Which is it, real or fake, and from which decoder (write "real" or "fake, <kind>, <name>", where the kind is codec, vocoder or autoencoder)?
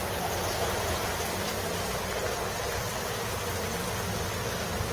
real